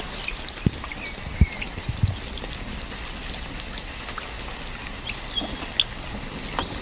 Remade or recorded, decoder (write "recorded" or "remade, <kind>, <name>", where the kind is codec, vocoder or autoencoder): recorded